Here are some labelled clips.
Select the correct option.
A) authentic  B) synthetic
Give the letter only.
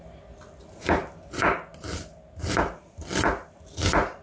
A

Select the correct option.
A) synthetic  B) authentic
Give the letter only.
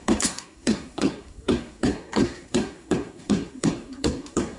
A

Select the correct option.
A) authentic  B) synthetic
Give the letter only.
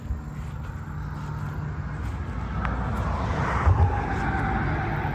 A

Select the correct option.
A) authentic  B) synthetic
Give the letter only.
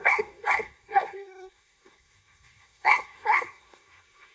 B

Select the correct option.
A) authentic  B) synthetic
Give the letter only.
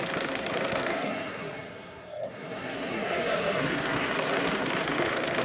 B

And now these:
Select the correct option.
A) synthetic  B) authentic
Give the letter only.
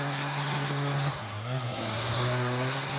A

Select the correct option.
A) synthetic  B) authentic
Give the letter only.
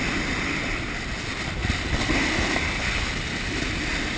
B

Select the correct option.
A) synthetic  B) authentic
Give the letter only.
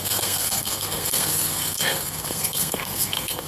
A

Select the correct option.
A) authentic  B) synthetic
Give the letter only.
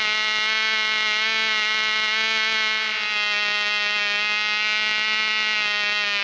A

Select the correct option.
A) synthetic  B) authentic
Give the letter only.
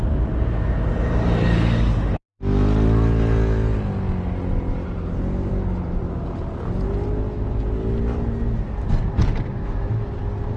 B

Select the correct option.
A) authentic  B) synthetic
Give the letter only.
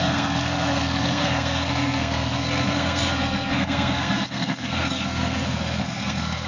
B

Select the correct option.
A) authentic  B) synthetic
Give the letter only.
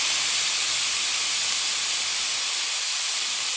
A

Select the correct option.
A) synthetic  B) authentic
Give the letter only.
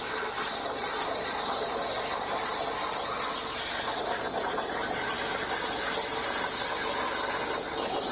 B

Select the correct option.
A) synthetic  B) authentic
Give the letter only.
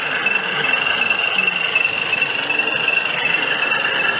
B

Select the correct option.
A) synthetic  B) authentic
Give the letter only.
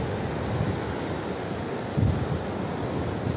B